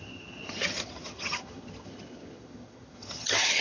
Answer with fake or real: fake